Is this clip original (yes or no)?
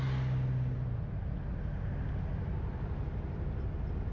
yes